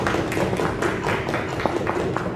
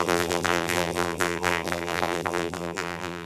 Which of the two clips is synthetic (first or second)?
second